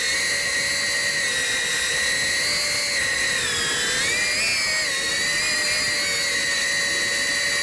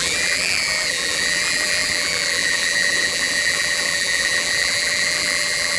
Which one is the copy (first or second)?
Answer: second